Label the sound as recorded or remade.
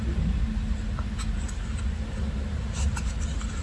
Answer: recorded